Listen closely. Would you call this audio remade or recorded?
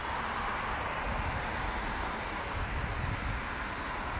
recorded